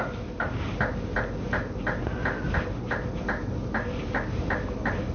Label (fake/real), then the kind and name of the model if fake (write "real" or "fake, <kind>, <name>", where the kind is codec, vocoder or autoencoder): real